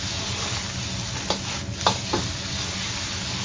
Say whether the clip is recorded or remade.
recorded